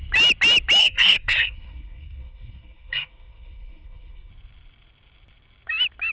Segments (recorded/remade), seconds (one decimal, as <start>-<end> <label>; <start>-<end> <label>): 0.0-0.8 recorded; 0.8-4.3 remade; 4.3-6.1 recorded